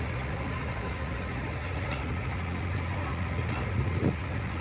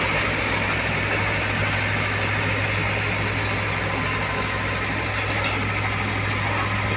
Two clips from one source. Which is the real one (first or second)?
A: second